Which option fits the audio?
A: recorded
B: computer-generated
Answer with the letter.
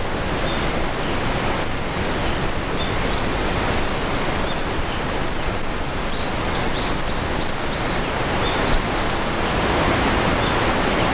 A